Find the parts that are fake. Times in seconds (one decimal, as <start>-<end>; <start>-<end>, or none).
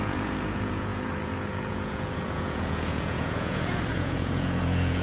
0.0-5.0